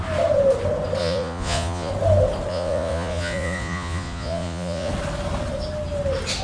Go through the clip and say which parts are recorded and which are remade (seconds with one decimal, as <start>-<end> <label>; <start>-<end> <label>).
0.0-1.0 recorded; 1.0-1.9 remade; 1.9-2.5 recorded; 2.5-4.9 remade; 4.9-6.4 recorded